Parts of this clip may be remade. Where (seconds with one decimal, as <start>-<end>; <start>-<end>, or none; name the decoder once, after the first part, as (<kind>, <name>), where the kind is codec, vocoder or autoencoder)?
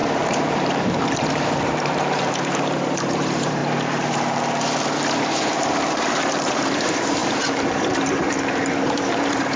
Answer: 0.0-3.6 (vocoder, BigVGAN v2); 6.1-9.6